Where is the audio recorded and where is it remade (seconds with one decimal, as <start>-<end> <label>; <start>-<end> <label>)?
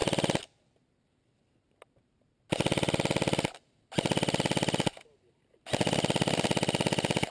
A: 0.0-7.3 recorded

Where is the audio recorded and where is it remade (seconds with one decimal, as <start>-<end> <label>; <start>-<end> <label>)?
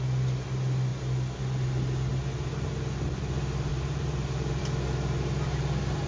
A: 0.0-3.7 recorded; 3.7-4.6 remade; 4.6-6.1 recorded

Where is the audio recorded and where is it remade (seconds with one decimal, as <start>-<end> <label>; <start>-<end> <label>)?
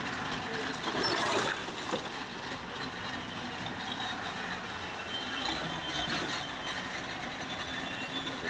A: 0.0-8.5 recorded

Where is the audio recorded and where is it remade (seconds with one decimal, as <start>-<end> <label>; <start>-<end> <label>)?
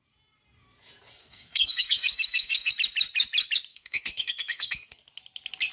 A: 0.0-1.2 recorded; 1.2-2.7 remade; 2.7-3.7 recorded; 3.7-5.0 remade; 5.0-5.7 recorded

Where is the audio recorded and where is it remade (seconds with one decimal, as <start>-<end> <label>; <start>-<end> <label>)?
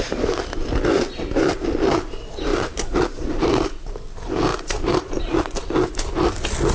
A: 0.0-2.5 recorded; 2.5-3.7 remade; 3.7-4.5 recorded; 4.5-5.2 remade; 5.2-6.7 recorded